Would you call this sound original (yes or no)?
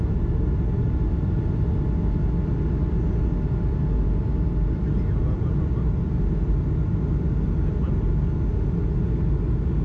yes